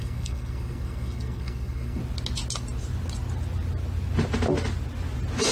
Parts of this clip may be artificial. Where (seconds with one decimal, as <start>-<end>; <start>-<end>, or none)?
0.0-2.0